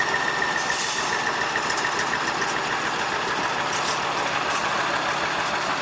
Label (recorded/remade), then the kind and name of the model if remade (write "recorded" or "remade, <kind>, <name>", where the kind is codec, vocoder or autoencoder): recorded